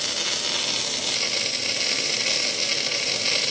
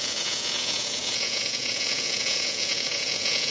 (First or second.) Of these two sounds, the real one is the first